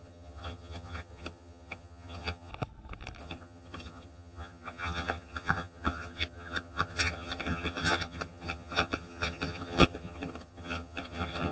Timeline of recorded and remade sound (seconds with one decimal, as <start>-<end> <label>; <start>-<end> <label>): 0.0-2.5 remade; 2.5-3.2 recorded; 3.2-11.5 remade